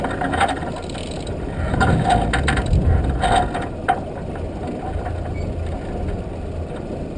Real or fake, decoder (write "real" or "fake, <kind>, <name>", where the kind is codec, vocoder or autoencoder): real